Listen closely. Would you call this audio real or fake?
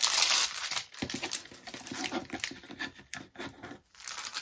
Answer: fake